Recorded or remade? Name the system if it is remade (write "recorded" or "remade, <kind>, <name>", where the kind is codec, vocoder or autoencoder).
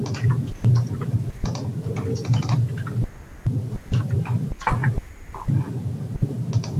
recorded